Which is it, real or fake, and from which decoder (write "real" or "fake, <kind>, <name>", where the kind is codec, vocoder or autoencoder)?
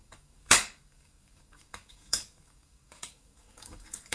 fake, codec, DAC